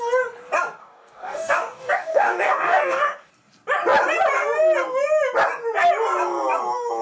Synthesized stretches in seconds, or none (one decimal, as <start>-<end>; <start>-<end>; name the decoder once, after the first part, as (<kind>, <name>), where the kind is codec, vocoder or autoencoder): 0.8-3.3 (codec, DAC)